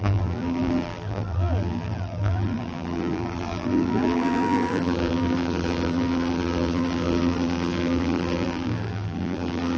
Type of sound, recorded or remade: remade